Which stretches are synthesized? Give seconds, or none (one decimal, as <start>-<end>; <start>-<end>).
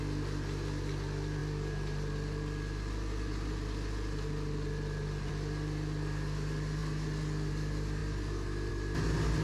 none